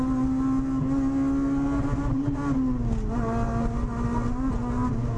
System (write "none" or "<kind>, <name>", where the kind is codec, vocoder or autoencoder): none